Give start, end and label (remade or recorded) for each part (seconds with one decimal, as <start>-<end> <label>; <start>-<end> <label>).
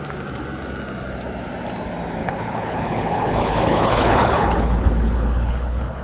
0.0-2.2 recorded; 2.2-6.0 remade